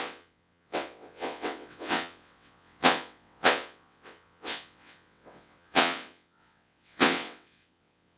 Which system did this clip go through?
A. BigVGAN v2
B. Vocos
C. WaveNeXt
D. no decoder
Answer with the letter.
C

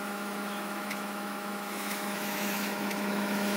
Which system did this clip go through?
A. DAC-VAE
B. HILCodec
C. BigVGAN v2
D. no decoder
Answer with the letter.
A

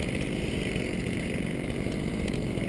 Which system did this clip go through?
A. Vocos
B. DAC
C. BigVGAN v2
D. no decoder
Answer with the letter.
C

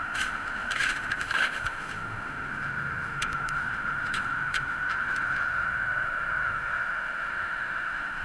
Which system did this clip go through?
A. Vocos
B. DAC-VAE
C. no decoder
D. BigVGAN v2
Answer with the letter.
B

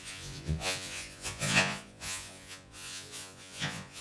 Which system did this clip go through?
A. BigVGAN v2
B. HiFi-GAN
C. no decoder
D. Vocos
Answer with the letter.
D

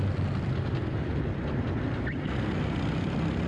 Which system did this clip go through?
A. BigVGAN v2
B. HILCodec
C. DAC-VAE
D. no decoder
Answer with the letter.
A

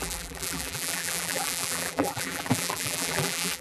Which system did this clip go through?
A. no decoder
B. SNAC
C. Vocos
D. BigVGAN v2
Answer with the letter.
D